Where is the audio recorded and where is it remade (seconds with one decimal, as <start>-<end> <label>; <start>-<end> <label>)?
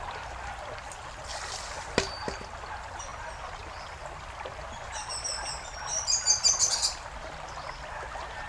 0.0-8.5 recorded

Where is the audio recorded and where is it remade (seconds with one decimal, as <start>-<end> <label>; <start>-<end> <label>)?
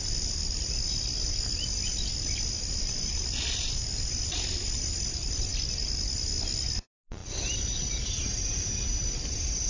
0.0-9.7 recorded